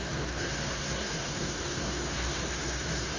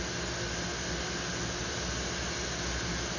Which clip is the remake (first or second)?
first